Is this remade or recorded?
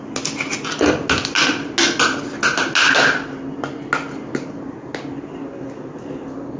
recorded